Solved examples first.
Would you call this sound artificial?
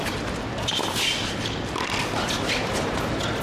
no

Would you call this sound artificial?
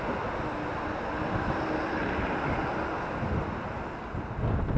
no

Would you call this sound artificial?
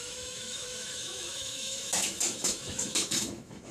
yes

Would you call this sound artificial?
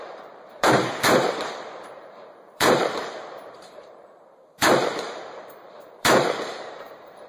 yes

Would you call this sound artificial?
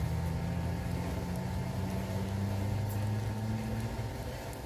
no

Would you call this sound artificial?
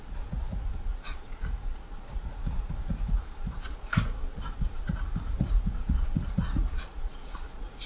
yes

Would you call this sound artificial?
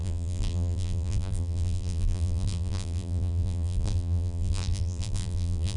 yes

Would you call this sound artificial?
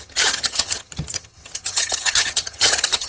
yes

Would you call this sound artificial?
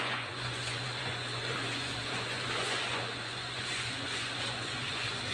yes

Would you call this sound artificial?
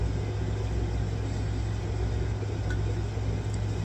no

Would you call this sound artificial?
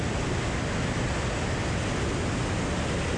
no